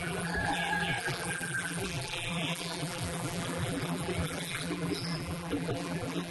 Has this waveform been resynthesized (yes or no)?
yes